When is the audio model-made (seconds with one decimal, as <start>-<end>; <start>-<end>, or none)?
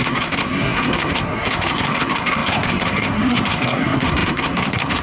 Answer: 0.0-5.0